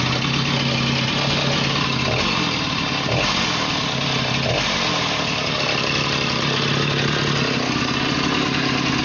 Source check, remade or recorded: recorded